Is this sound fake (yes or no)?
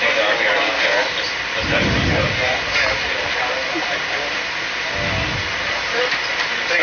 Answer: no